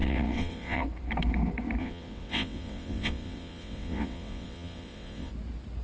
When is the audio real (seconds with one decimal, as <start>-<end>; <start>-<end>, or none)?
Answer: 0.8-1.8; 5.3-5.8